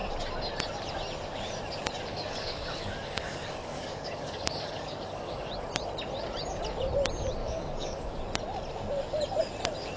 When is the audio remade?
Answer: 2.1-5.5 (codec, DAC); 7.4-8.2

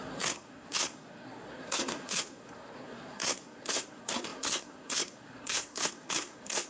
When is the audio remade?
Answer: 0.0-6.7 (codec, SNAC)

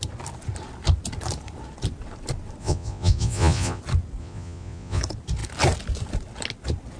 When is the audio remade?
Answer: 2.6-3.8 (vocoder, Vocos); 4.2-5.0

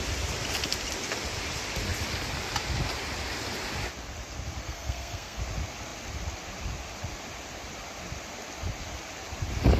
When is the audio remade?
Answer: 4.6-5.4 (codec, SNAC)

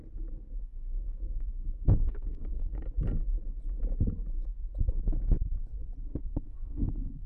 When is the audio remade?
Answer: 0.6-2.8 (codec, SNAC); 6.3-7.3

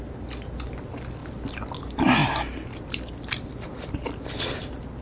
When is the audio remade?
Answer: none

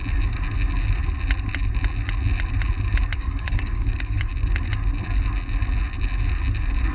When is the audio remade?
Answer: 3.2-4.3 (codec, DAC)